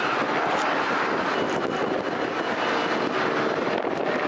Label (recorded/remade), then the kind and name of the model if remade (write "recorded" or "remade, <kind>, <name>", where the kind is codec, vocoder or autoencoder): recorded